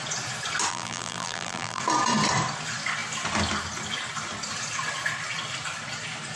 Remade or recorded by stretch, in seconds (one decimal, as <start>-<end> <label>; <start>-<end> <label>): 0.0-0.7 recorded; 0.7-1.8 remade; 1.8-6.4 recorded